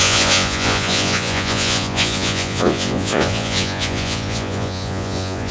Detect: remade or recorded remade